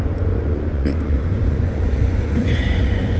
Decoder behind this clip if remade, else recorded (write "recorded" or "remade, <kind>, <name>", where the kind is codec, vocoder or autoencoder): remade, vocoder, Vocos